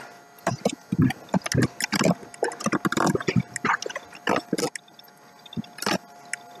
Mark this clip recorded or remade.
recorded